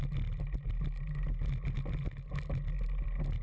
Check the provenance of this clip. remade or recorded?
recorded